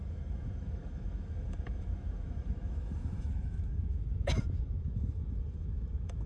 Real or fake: fake